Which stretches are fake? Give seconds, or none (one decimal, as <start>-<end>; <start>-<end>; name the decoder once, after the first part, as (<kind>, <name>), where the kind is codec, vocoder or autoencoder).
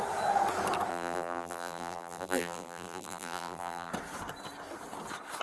0.9-3.9 (vocoder, BigVGAN v2)